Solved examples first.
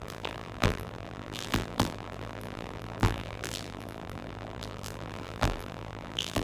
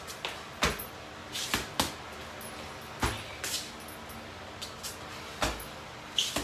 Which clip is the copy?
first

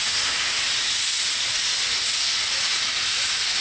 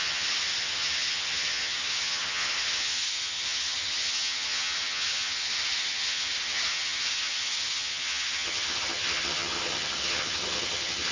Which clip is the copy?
second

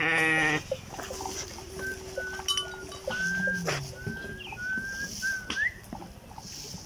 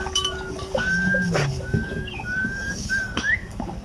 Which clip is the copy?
second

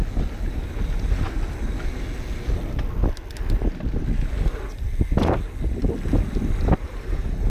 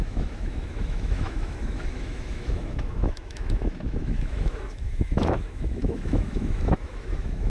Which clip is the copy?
second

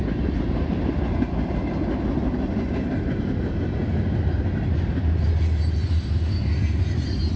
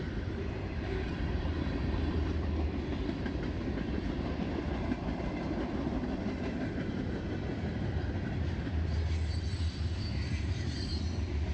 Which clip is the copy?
second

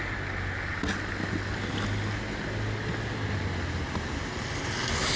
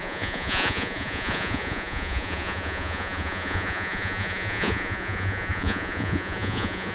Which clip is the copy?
second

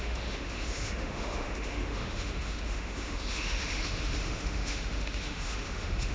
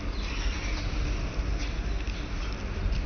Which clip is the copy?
first